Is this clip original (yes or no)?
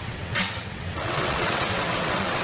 no